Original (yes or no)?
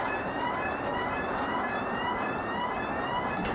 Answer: no